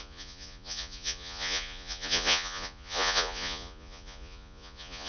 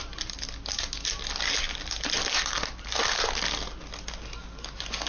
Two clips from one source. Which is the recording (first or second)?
second